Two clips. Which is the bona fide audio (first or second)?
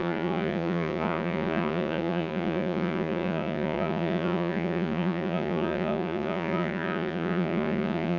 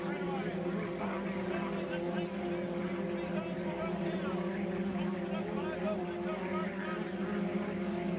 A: second